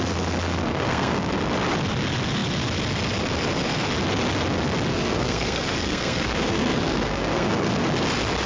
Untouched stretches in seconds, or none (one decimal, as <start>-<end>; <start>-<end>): 0.0-0.7; 1.3-4.9; 7.7-8.5